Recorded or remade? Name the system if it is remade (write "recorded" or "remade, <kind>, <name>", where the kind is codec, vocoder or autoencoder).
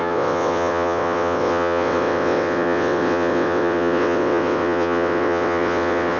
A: remade, vocoder, WaveNeXt